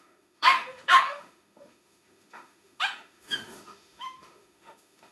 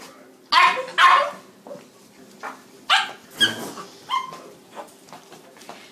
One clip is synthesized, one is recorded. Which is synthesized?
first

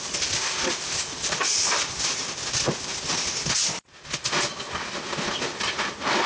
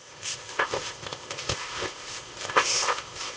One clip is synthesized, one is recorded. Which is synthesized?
second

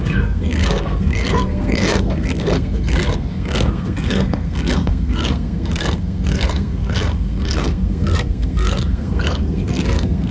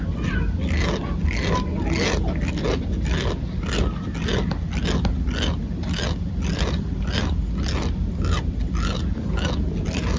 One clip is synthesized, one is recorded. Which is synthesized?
first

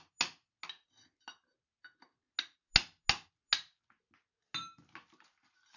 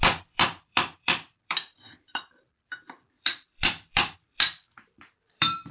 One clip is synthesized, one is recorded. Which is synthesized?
second